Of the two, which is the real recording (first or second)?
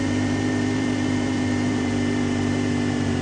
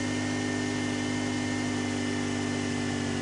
second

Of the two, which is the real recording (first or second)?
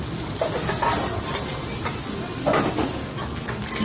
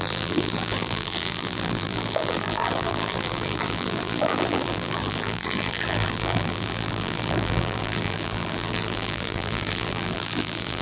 first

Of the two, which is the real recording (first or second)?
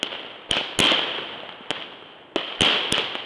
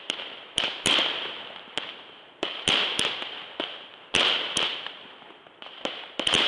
first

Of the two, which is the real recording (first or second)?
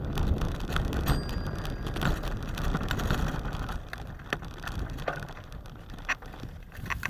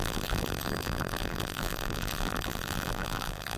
first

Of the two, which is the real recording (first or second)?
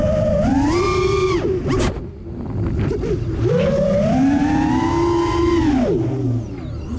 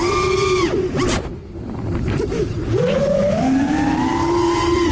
first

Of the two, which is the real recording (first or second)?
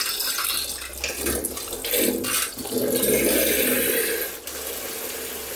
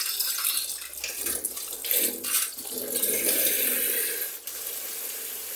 first